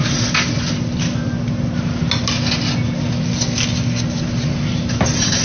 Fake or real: real